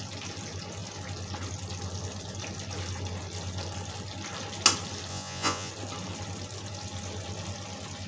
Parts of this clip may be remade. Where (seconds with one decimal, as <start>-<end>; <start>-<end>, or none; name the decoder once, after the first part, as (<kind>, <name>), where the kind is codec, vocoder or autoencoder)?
5.1-5.7 (vocoder, Vocos)